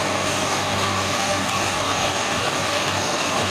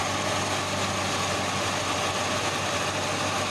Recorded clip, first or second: second